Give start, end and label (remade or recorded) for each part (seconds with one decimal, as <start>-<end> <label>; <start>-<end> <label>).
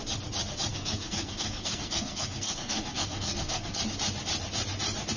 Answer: 0.0-0.7 recorded; 0.7-3.8 remade; 3.8-5.2 recorded